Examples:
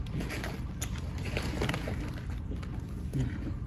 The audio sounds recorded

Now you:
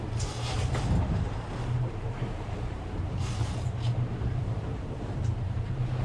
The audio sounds remade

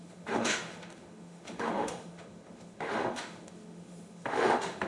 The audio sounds remade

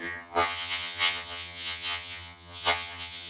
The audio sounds remade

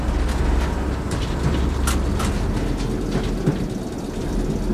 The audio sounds recorded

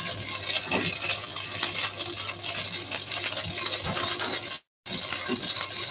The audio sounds recorded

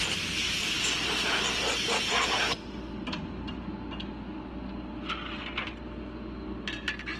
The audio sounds recorded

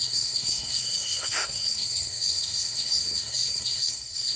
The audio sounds remade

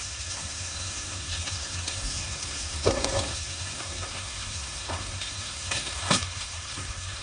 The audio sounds remade